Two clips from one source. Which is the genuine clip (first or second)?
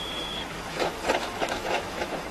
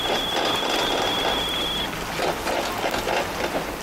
second